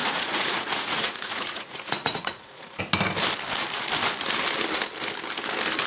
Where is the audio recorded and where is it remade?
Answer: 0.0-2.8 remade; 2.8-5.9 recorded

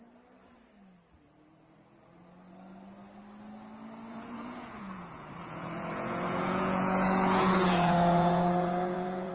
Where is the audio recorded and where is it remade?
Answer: 0.0-4.1 recorded; 4.1-9.3 remade